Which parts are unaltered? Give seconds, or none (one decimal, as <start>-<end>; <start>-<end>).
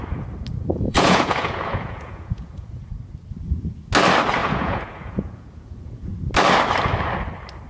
0.0-0.7; 2.9-4.4; 6.1-7.7